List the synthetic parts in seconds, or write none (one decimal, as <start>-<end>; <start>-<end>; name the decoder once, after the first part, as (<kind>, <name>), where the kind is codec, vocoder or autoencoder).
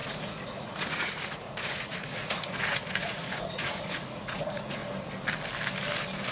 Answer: 0.0-4.8 (vocoder, Vocos)